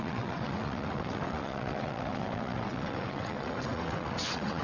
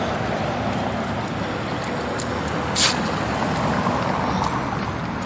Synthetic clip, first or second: first